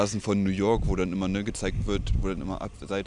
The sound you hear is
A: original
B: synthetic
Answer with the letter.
A